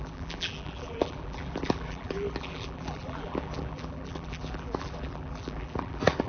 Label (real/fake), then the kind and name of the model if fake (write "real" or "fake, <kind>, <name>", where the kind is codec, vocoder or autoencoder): fake, vocoder, BigVGAN v2